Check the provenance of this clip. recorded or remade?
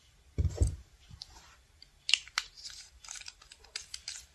recorded